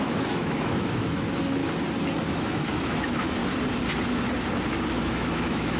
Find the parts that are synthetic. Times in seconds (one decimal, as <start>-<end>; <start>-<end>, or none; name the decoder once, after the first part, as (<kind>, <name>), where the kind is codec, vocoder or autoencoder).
0.0-1.6 (autoencoder, DAC-VAE); 2.3-3.4; 4.9-5.8